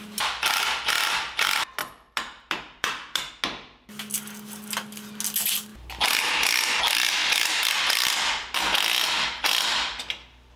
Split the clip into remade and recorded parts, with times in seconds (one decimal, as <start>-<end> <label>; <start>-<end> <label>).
0.0-1.8 recorded; 1.8-3.3 remade; 3.3-10.6 recorded